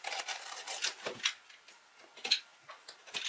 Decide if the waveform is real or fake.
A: real